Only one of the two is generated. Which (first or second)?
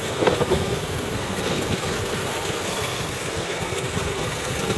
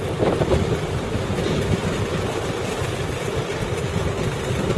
first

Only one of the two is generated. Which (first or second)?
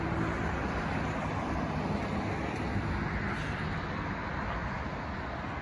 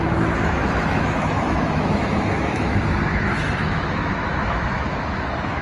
second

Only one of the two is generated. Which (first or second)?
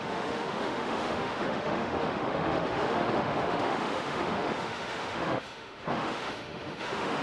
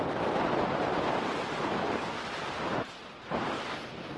first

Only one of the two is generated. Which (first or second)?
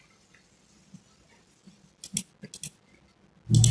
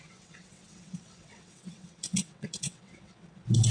second